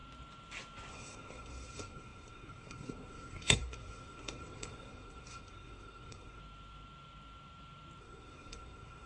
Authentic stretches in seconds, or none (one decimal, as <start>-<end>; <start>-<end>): 0.0-0.9; 6.4-8.0